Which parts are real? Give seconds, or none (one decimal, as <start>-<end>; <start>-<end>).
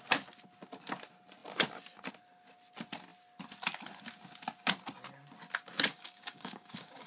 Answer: 0.0-5.9